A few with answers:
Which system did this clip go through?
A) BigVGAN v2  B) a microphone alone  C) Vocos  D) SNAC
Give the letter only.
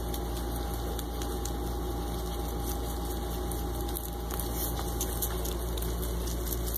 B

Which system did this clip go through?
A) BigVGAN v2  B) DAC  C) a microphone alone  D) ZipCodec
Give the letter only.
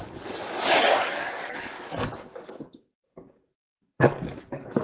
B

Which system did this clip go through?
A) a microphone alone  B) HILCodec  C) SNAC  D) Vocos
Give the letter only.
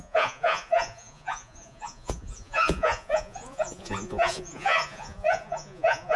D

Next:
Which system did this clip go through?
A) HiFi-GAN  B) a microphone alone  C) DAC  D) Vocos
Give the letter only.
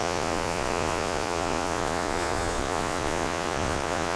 D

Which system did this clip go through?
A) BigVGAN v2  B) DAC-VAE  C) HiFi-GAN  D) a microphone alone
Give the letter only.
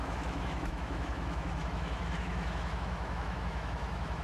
B